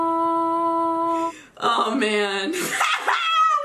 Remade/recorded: recorded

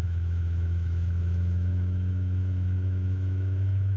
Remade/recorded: remade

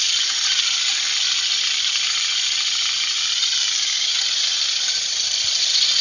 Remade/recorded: recorded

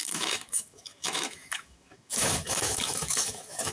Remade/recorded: remade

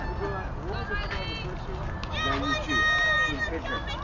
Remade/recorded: recorded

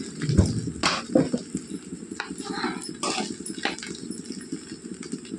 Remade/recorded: recorded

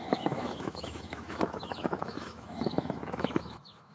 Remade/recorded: remade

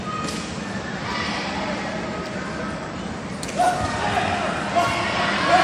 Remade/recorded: recorded